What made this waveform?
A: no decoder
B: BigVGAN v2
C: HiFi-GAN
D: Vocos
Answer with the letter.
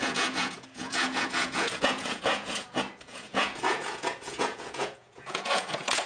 D